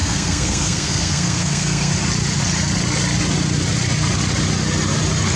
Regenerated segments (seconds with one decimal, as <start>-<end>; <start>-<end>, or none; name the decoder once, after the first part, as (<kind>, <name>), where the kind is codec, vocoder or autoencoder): 0.0-1.9 (codec, SNAC)